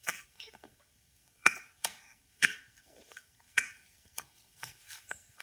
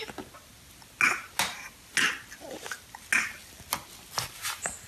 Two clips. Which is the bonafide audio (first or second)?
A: second